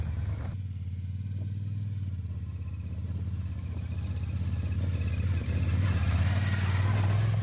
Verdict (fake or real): real